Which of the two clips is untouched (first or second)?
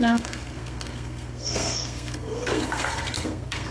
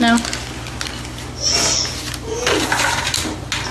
second